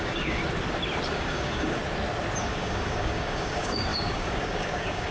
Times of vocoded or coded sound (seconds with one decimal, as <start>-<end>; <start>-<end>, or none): 0.0-0.4; 1.1-1.8; 2.4-5.1